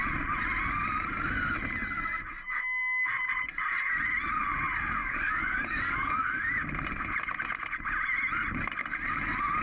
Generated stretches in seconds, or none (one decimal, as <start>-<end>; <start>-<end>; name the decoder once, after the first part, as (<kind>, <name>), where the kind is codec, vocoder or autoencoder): 5.0-6.3 (codec, DAC)